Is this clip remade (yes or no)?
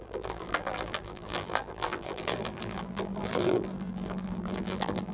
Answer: yes